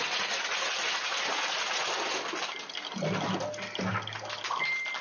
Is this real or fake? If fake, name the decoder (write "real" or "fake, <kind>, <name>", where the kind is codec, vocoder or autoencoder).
real